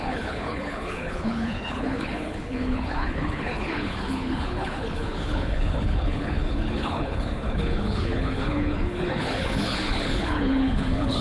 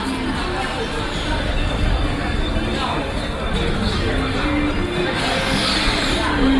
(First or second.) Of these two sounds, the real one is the second